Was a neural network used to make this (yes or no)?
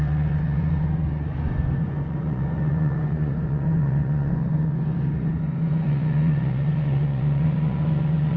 yes